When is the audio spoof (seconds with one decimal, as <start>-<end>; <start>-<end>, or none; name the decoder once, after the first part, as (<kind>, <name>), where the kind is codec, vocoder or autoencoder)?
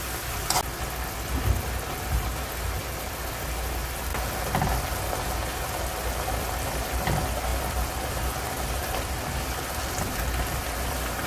none